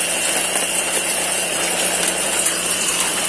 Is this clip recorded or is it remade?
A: remade